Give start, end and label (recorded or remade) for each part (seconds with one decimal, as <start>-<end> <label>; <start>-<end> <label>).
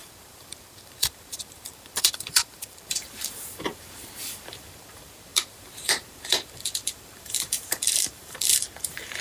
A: 0.0-9.2 remade